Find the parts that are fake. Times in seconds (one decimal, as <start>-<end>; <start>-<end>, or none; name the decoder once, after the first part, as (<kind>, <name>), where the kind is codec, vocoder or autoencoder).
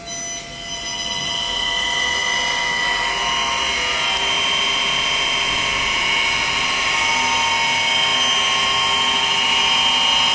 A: none